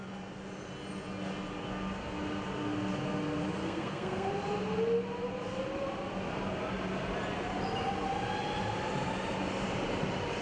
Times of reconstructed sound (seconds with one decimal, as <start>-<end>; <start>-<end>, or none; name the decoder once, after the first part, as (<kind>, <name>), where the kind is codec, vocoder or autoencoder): 3.6-4.3 (codec, SNAC)